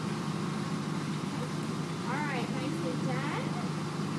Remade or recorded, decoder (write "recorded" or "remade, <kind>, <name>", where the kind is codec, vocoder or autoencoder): recorded